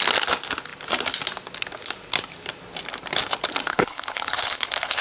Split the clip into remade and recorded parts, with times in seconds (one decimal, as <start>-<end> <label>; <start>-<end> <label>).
0.0-3.7 recorded; 3.7-5.0 remade